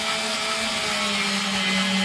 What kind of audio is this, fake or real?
real